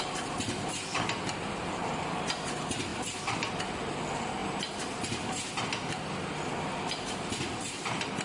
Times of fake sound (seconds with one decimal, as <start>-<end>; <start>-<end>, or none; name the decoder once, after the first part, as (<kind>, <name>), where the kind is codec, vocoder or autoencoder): 0.0-4.4 (vocoder, BigVGAN v2); 6.8-8.2